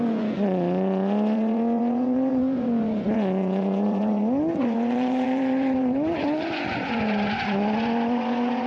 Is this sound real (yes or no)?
no